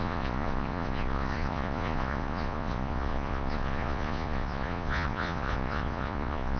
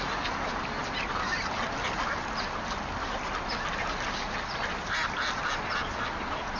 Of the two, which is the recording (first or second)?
second